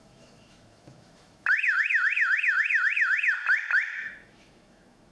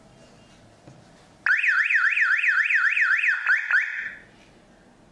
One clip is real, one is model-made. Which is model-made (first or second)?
first